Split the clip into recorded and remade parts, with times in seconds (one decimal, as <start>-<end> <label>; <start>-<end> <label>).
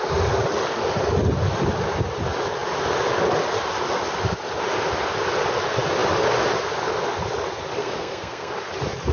0.0-7.8 recorded; 7.8-8.5 remade; 8.5-9.1 recorded